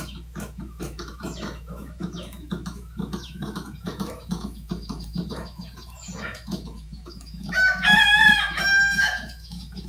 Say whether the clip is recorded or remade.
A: remade